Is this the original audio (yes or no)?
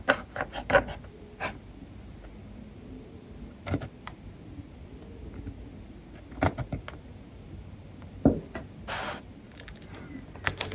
yes